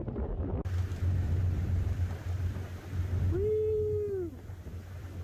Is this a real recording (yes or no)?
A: yes